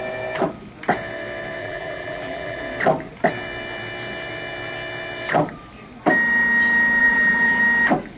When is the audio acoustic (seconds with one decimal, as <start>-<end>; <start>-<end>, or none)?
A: 0.0-1.6; 2.6-7.0; 7.6-8.2